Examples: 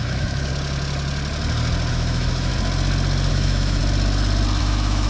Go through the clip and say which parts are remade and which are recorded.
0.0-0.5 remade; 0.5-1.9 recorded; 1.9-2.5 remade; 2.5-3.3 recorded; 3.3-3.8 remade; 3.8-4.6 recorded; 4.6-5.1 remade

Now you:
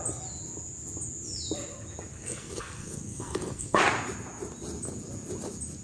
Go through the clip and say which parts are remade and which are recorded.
0.0-2.1 recorded; 2.1-3.8 remade; 3.8-5.8 recorded

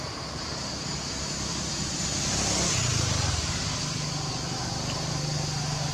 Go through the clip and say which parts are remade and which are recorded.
0.0-5.9 recorded

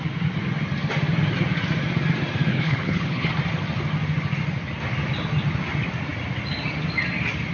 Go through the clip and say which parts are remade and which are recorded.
0.0-2.5 recorded; 2.5-3.3 remade; 3.3-7.5 recorded

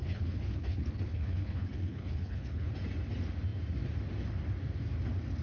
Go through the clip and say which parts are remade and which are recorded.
0.0-2.7 remade; 2.7-5.4 recorded

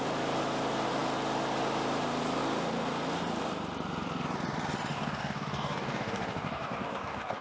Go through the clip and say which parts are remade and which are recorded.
0.0-4.9 recorded; 4.9-7.4 remade